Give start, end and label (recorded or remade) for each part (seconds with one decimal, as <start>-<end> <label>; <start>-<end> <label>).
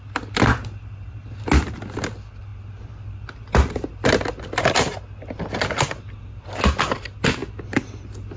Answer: 0.0-8.4 recorded